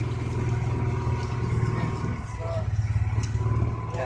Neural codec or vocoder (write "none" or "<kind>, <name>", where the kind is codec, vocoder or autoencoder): none